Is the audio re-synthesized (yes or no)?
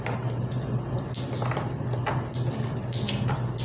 no